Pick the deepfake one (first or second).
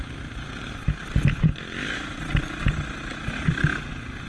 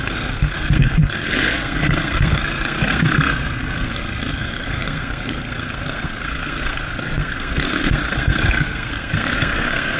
second